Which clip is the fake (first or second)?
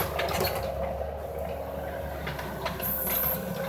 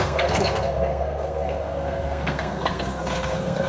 second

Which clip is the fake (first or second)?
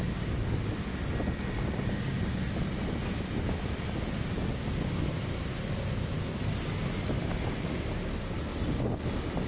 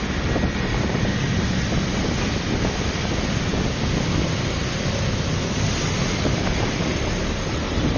second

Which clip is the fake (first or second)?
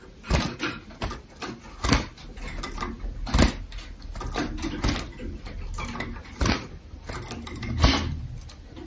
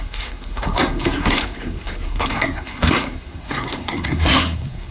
second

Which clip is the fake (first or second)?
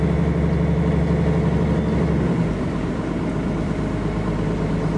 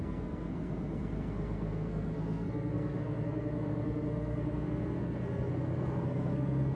second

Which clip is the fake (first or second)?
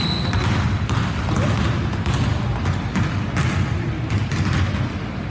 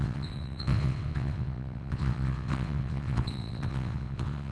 second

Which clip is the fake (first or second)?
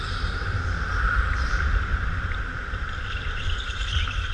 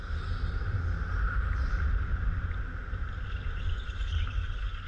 first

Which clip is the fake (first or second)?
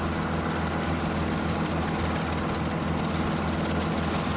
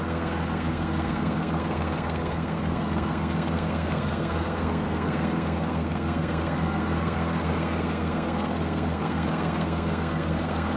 second